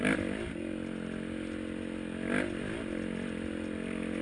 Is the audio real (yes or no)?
yes